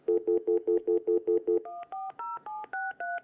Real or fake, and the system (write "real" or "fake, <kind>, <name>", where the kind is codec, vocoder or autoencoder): fake, codec, DAC